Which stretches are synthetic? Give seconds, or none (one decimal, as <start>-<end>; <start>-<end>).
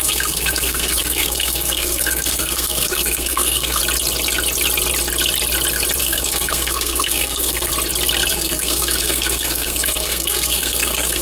0.0-3.8; 6.0-7.7; 8.3-11.2